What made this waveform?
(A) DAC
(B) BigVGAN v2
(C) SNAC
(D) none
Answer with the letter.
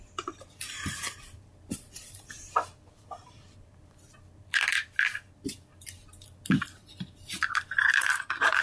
B